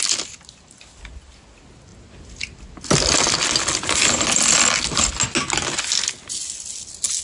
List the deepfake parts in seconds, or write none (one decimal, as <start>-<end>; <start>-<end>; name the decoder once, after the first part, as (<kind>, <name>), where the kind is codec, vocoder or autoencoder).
none